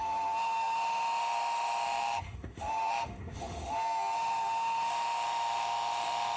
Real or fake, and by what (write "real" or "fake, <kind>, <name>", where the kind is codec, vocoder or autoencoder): fake, autoencoder, DAC-VAE